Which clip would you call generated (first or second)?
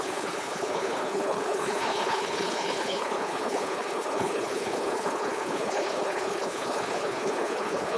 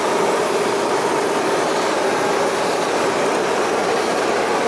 first